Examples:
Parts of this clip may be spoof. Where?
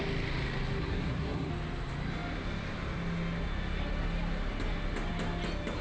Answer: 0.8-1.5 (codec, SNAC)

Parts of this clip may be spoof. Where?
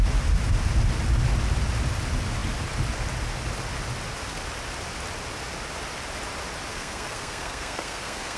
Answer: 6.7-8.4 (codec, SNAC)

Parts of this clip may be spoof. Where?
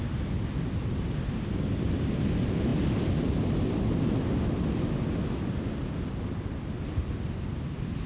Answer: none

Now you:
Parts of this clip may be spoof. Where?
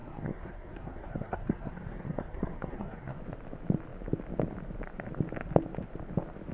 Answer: 0.0-3.2 (codec, SNAC)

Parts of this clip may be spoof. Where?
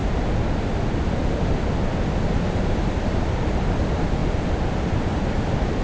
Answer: none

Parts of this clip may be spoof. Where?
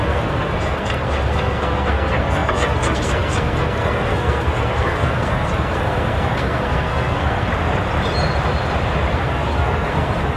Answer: 0.0-7.5 (codec, SNAC); 9.1-10.4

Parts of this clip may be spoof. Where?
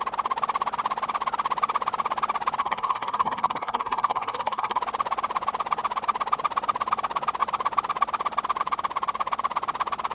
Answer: 2.6-4.8 (codec, SNAC)